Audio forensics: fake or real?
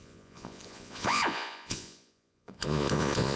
fake